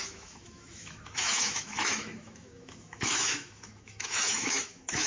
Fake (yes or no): yes